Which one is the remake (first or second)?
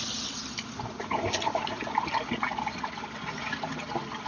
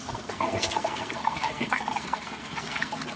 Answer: second